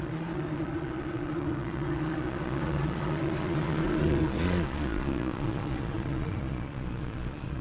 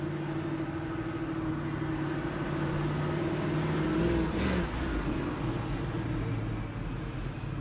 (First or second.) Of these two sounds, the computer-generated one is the first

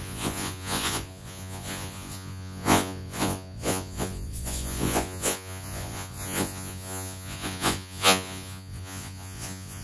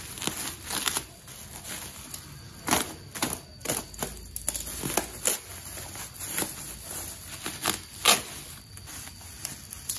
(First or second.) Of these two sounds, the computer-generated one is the first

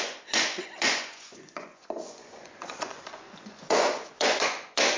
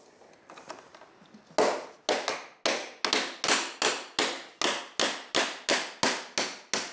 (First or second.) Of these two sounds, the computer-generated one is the first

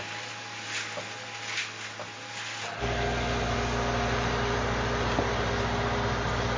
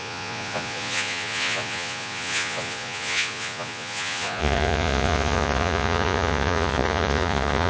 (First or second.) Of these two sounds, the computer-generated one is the second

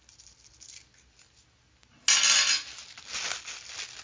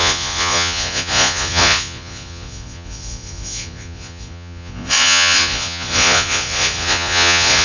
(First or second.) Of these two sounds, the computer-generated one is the second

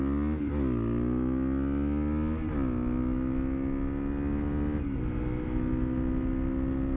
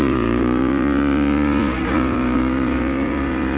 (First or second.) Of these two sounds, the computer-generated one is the second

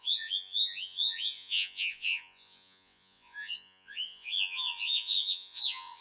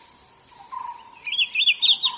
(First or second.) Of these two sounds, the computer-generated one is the first